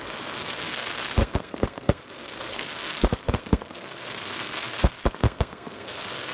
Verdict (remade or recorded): remade